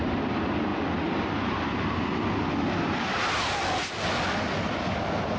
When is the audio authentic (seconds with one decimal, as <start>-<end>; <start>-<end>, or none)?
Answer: 0.0-5.4